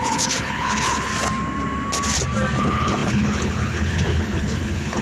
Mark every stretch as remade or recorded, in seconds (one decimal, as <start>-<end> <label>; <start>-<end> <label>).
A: 0.0-1.1 remade; 1.1-2.6 recorded; 2.6-5.0 remade